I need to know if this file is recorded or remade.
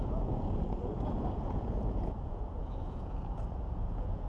remade